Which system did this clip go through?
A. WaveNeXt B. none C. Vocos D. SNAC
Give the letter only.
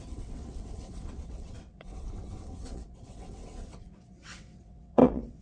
A